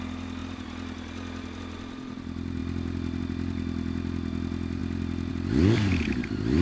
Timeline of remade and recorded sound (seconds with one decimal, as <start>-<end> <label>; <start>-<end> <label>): 0.0-6.6 recorded